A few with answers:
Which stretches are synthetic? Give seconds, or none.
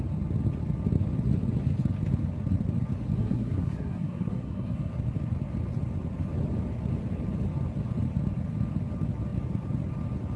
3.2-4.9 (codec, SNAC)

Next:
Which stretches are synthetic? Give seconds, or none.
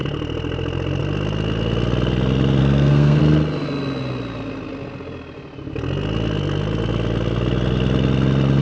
2.6-3.2 (codec, SNAC)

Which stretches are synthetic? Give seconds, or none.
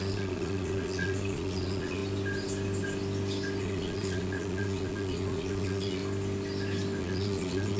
0.0-2.0 (vocoder, Vocos); 3.6-6.0; 7.0-7.8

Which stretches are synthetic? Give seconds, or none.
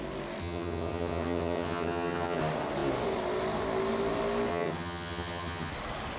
0.4-2.4 (vocoder, HiFi-GAN); 4.5-5.7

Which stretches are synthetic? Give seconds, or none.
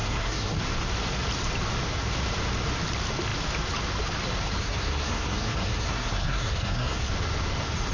0.0-0.6 (codec, SNAC); 4.6-7.1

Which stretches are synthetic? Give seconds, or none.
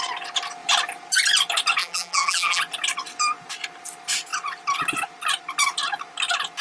1.8-2.6 (vocoder, BigVGAN v2)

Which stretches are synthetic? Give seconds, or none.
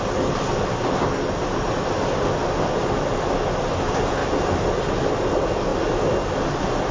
none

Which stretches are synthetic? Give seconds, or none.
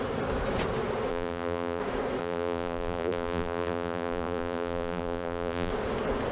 1.1-1.8 (vocoder, BigVGAN v2); 2.2-5.7